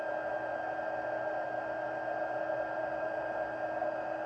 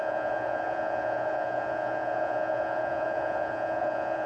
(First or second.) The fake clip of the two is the second